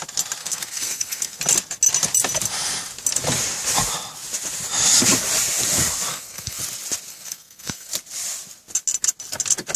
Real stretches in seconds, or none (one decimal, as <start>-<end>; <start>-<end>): 0.0-0.4; 1.4-6.1; 6.6-7.1; 7.9-9.8